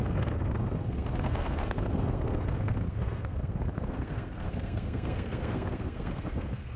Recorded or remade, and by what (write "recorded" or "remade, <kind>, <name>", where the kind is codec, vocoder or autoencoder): remade, codec, SNAC